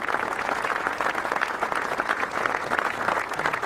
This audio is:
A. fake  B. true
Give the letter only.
A